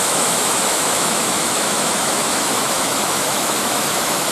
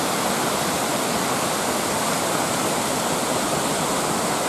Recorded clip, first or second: second